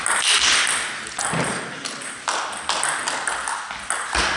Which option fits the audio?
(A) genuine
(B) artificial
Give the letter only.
A